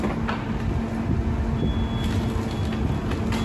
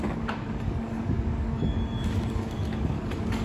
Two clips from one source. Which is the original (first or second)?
first